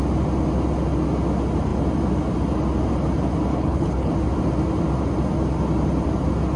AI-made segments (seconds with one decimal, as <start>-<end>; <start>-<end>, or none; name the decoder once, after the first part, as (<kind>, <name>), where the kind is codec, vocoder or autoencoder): 3.5-4.1 (codec, HILCodec)